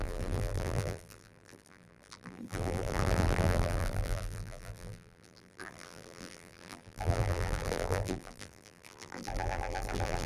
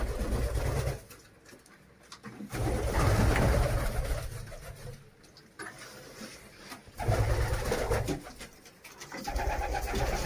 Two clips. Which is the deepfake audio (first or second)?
first